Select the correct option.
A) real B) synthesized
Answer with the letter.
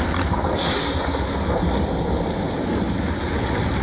A